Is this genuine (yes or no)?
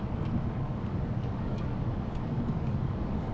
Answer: no